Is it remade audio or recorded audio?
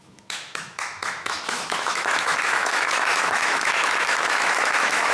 remade